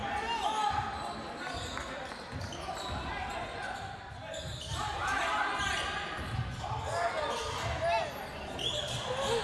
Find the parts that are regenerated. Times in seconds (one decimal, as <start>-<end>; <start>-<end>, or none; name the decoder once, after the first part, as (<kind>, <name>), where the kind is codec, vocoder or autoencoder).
4.5-5.2 (vocoder, BigVGAN v2)

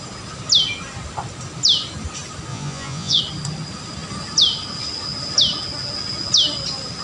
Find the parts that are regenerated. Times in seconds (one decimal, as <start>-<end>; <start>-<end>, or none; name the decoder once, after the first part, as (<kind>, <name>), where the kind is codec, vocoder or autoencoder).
2.5-3.2 (vocoder, Vocos)

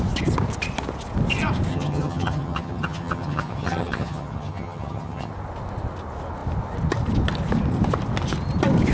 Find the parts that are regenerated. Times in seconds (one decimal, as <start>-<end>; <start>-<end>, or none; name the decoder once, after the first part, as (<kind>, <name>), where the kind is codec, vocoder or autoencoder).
1.7-5.3 (vocoder, HiFi-GAN)

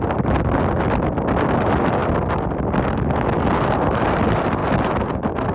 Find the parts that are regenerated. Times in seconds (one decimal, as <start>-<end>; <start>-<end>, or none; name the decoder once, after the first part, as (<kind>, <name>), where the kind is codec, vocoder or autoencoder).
none

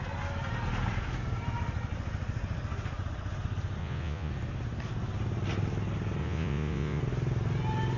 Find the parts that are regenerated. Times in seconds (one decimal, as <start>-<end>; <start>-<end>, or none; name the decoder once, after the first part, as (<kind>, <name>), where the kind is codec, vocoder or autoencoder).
3.8-4.3 (vocoder, Vocos); 6.2-7.0